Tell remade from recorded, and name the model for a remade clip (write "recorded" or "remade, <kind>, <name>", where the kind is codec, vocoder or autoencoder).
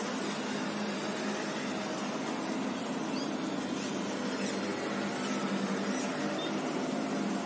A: recorded